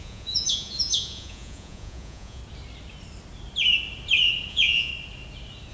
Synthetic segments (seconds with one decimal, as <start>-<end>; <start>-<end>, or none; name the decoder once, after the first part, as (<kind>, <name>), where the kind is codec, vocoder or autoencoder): 0.0-2.4 (vocoder, Vocos); 4.5-4.9